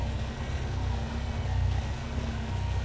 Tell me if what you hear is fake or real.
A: fake